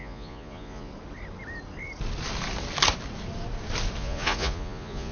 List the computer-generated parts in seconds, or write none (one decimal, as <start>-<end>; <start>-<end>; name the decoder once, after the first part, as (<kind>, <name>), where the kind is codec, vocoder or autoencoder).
0.0-0.9 (vocoder, Vocos); 4.0-5.1